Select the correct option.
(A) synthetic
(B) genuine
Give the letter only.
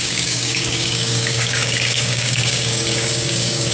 A